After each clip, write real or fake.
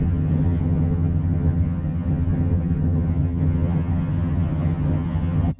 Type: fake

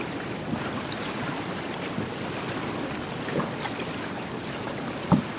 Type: real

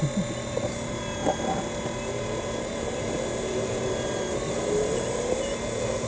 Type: real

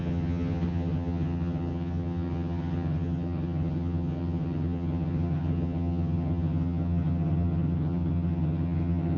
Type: fake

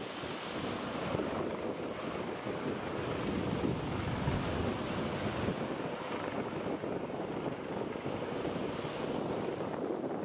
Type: real